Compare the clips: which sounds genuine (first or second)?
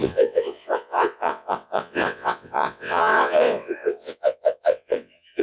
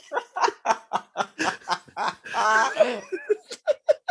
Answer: second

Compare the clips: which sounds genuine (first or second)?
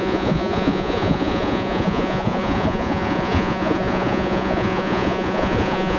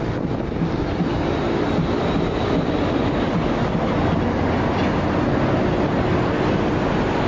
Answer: second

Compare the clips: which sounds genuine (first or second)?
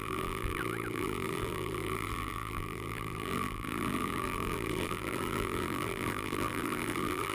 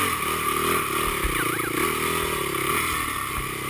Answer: second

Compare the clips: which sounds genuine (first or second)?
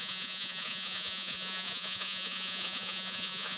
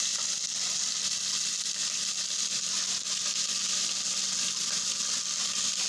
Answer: second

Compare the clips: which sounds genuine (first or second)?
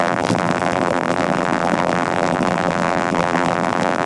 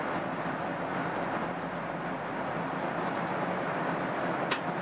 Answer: second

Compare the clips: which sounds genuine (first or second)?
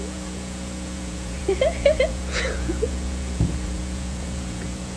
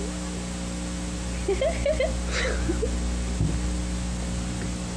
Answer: second